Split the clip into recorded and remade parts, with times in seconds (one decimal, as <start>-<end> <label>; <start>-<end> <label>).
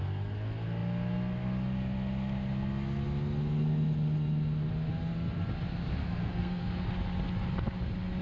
0.0-6.0 recorded; 6.0-6.6 remade; 6.6-8.2 recorded